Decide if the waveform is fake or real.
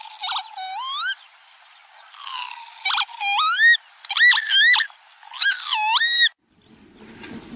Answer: real